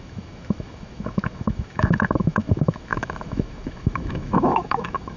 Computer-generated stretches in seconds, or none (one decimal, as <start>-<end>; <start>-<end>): 0.0-5.2